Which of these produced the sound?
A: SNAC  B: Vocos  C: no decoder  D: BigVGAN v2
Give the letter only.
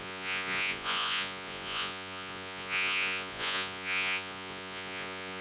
B